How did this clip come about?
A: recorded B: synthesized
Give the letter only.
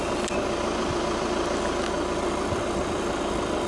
A